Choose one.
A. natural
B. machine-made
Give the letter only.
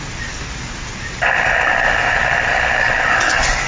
A